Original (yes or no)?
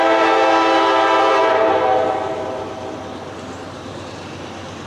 yes